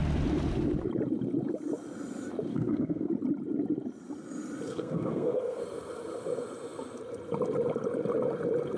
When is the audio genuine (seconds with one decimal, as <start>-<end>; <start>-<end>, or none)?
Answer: 0.0-2.5; 3.1-4.7; 5.6-8.8